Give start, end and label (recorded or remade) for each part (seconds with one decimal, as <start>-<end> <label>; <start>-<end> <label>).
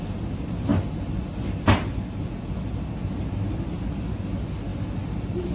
0.0-5.5 recorded